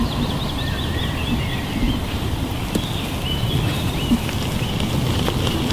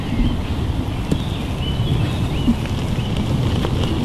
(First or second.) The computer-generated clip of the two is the first